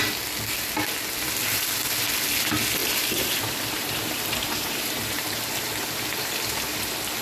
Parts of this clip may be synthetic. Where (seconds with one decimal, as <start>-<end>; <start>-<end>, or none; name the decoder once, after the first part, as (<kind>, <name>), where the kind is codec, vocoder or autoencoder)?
2.8-5.5 (vocoder, BigVGAN v2)